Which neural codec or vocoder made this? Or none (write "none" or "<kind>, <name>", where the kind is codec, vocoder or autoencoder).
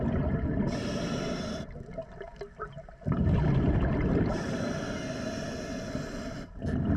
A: none